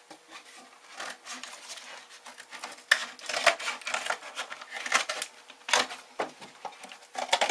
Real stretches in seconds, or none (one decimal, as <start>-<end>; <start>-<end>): 0.0-7.5